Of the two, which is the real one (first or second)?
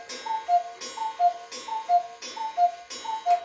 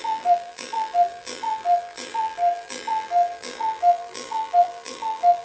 first